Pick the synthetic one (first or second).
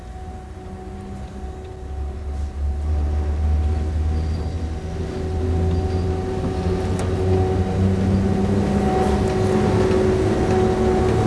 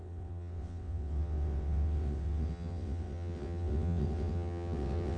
second